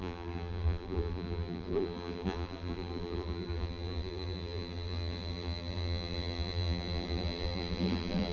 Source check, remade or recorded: remade